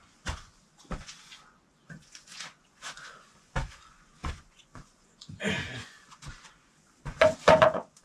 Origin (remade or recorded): remade